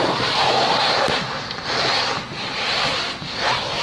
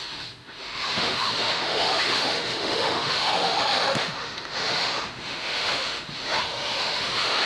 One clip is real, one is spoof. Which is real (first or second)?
first